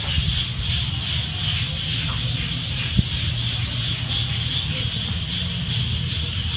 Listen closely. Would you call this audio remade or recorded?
recorded